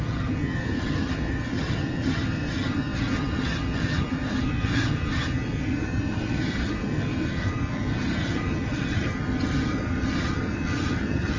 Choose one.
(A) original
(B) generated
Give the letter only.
B